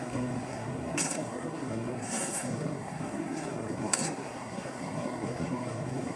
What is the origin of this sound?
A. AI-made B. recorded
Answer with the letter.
A